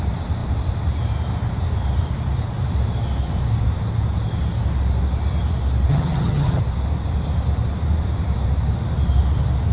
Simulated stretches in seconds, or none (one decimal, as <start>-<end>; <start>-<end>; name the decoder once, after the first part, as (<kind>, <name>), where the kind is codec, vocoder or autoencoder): 5.9-6.6 (vocoder, HiFi-GAN)